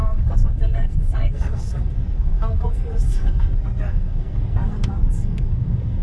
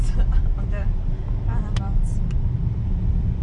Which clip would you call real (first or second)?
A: second